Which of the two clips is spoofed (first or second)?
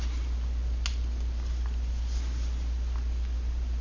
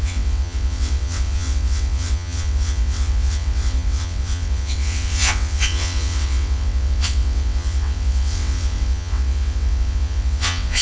second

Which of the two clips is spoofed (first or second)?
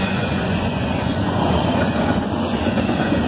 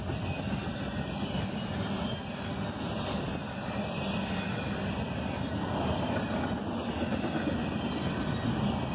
first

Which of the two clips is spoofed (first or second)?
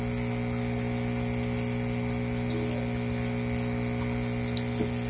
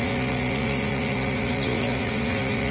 second